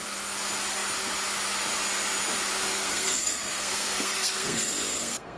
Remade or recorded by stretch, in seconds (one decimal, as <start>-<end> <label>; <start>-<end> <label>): 0.0-2.7 recorded; 2.7-5.4 remade